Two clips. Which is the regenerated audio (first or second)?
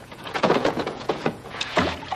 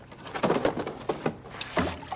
first